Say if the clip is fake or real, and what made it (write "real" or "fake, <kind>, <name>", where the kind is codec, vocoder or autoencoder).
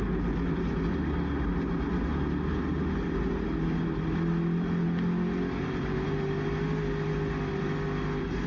real